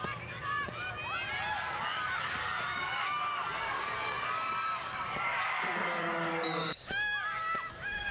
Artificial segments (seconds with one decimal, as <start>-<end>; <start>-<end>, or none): 0.0-1.0; 1.5-8.1